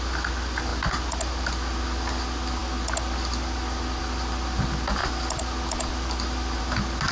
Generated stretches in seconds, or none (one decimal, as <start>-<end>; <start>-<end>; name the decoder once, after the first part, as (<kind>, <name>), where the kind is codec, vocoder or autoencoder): 5.0-6.6 (vocoder, BigVGAN v2)